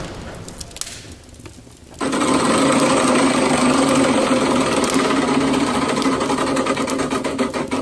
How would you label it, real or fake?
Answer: real